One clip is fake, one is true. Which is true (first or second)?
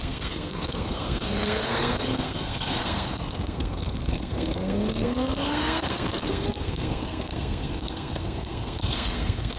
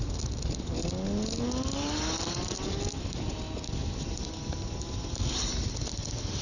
second